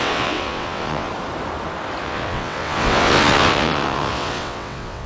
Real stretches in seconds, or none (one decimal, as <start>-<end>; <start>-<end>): 1.1-2.0